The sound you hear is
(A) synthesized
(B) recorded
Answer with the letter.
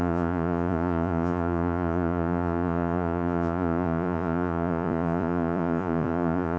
A